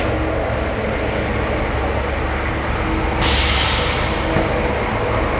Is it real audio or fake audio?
real